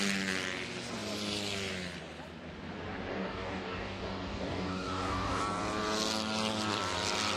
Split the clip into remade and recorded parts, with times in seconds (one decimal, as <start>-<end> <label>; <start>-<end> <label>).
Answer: 0.0-3.1 recorded; 3.1-5.4 remade; 5.4-7.4 recorded